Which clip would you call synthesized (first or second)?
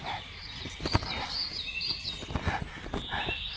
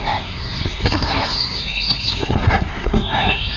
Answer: second